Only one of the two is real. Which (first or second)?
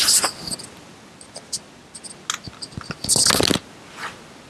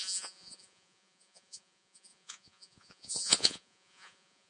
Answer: first